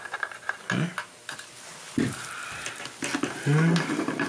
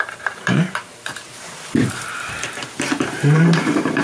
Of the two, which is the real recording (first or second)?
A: first